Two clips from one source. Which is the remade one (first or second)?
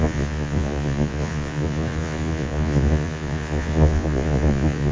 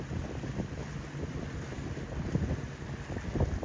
first